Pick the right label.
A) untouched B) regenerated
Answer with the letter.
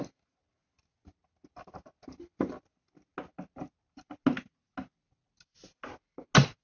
A